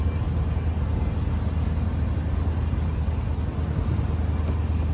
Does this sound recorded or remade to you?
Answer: recorded